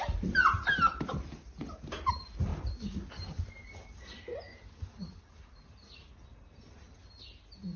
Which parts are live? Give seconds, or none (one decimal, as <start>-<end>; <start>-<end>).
0.0-4.6; 6.0-7.8